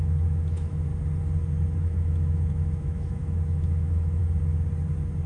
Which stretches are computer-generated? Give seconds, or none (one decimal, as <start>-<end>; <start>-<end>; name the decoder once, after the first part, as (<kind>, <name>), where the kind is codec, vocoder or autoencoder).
0.0-0.9 (autoencoder, DAC-VAE); 1.8-4.2